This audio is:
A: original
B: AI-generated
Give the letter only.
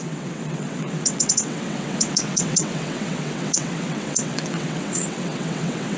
B